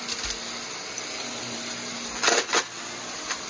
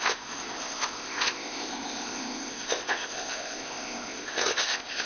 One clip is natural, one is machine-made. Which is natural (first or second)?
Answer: first